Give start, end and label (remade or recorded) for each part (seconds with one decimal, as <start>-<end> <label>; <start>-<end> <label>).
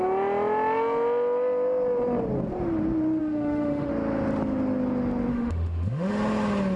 0.0-3.2 recorded; 3.2-3.9 remade; 3.9-5.3 recorded; 5.3-6.1 remade; 6.1-6.8 recorded